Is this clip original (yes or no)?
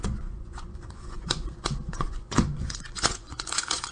no